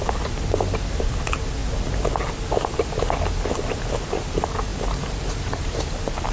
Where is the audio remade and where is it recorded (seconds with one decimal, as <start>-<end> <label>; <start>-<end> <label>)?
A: 0.0-6.3 recorded